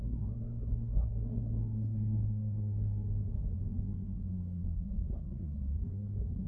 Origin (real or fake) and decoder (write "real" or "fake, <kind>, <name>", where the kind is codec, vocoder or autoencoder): fake, codec, SNAC